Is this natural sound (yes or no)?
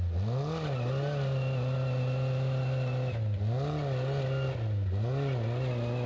yes